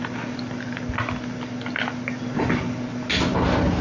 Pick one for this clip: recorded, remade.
recorded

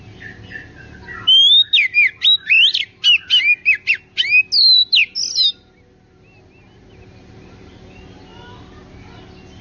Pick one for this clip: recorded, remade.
recorded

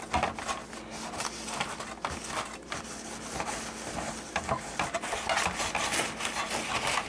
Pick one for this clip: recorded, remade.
recorded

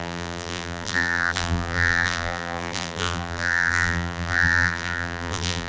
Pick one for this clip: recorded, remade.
remade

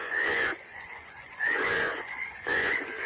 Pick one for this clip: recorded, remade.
remade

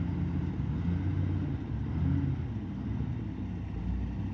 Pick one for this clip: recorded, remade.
recorded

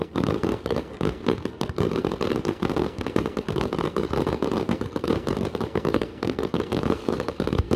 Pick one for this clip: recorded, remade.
remade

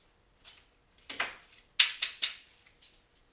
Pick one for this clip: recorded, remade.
recorded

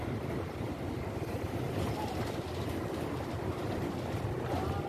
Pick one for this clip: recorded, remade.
recorded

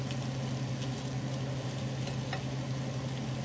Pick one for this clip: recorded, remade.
recorded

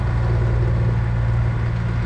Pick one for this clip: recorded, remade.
recorded